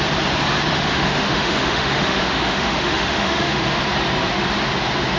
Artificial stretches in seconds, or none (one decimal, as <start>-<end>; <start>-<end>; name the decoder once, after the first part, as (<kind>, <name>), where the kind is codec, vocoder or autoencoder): 0.7-3.8 (autoencoder, DAC-VAE)

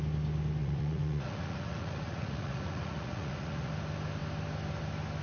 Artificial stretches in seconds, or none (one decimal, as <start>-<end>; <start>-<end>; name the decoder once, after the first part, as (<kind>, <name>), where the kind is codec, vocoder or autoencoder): 0.6-3.7 (vocoder, Vocos)

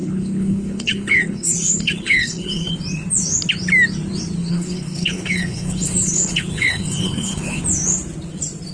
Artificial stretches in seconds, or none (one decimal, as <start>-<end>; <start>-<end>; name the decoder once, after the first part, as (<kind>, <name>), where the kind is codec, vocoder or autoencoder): 0.0-2.7 (codec, HILCodec); 4.4-7.6